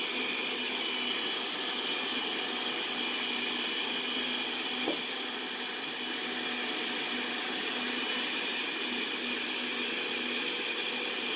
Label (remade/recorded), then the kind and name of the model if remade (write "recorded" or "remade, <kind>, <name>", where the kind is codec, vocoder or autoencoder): recorded